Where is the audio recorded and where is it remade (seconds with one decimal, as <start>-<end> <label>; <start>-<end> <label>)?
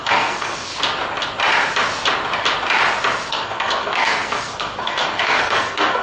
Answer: 0.0-0.7 remade; 0.7-3.3 recorded; 3.3-6.0 remade